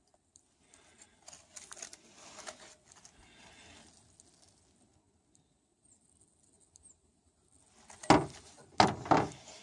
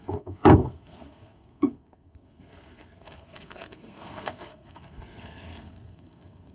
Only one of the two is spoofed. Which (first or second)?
second